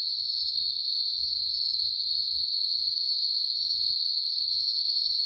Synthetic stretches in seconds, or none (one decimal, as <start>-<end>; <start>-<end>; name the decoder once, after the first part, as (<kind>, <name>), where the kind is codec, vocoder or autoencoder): none